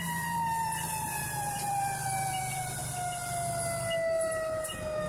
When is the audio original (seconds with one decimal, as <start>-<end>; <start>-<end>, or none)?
2.8-5.1